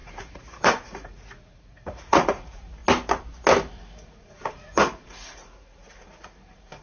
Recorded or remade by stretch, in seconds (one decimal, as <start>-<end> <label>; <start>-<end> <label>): 0.0-2.8 remade; 2.8-3.7 recorded; 3.7-6.8 remade